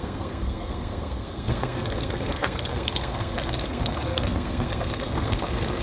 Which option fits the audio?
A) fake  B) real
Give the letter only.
A